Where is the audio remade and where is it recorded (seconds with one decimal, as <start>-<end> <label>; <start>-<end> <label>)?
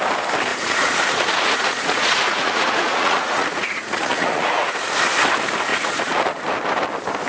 0.0-0.5 recorded; 0.5-4.9 remade; 4.9-5.7 recorded; 5.7-6.5 remade; 6.5-7.3 recorded